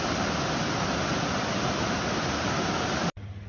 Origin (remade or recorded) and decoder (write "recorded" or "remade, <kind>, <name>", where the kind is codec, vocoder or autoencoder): recorded